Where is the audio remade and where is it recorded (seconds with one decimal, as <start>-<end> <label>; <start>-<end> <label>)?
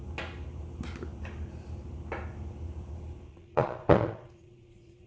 0.0-3.3 recorded; 3.3-5.1 remade